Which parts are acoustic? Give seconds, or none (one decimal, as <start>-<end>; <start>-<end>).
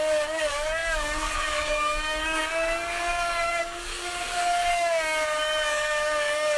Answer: none